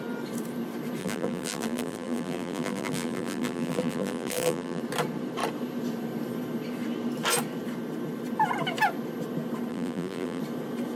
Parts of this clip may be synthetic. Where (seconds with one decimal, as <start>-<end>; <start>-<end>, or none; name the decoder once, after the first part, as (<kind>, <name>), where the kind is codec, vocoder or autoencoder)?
1.0-4.8 (vocoder, BigVGAN v2); 9.7-10.4